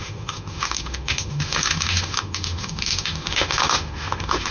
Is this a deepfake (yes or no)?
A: yes